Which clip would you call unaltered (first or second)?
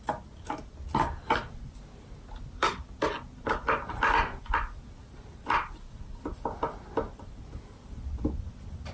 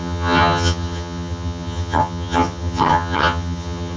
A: first